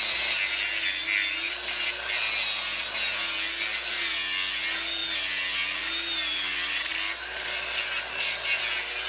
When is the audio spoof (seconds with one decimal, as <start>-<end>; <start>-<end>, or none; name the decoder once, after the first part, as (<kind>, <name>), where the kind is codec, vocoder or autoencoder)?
none